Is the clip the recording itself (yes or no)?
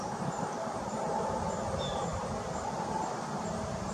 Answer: no